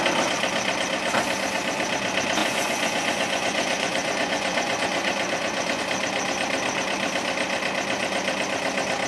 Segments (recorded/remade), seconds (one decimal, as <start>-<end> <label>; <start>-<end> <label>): 0.0-2.4 recorded; 2.4-5.8 remade; 5.8-9.1 recorded